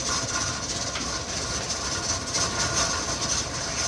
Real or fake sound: real